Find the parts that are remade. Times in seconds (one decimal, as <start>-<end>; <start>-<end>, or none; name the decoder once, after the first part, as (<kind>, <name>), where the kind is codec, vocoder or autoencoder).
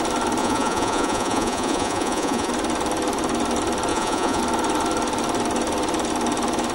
0.4-2.5 (vocoder, Vocos); 3.9-4.4